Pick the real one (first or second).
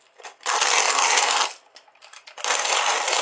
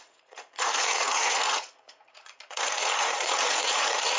first